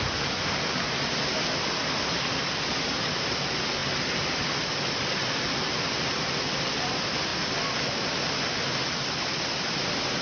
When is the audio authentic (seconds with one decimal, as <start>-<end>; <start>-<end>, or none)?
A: 0.0-10.2